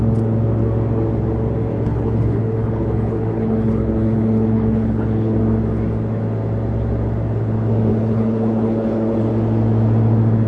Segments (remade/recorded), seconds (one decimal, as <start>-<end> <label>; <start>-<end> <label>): 0.0-1.7 recorded; 1.7-5.4 remade; 5.4-7.9 recorded; 7.9-9.3 remade; 9.3-10.5 recorded